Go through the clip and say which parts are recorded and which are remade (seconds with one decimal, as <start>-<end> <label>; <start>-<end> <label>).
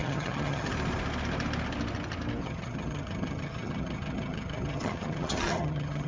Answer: 0.0-0.7 remade; 0.7-2.4 recorded; 2.4-6.1 remade